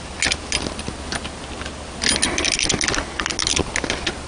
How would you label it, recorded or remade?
recorded